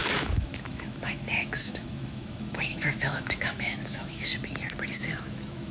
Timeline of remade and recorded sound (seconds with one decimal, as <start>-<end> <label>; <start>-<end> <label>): 0.0-4.3 remade; 4.3-4.9 recorded; 4.9-5.7 remade